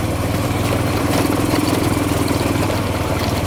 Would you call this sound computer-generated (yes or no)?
yes